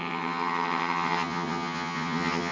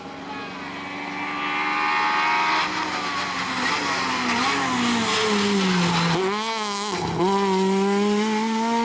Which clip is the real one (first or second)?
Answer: second